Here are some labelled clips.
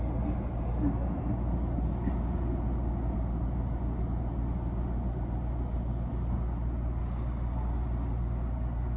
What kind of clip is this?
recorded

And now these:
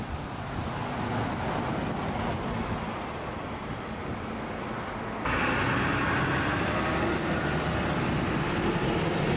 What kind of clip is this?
recorded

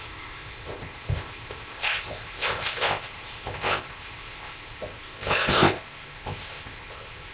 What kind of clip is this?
remade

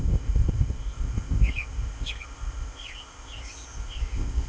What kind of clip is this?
remade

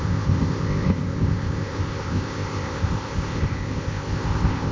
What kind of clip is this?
remade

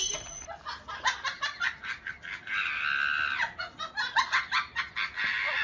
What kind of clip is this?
recorded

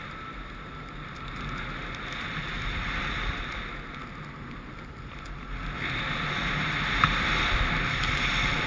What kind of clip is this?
recorded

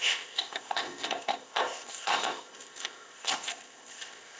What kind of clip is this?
remade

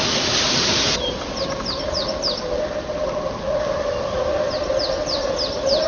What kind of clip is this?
recorded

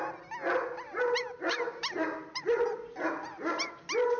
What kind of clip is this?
recorded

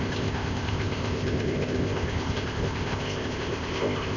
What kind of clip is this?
remade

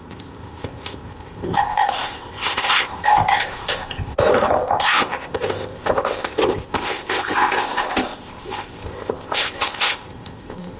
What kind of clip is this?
remade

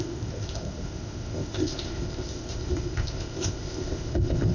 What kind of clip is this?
remade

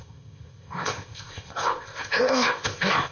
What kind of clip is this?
remade